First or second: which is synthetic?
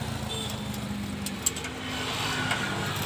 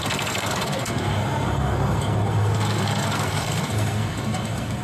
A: second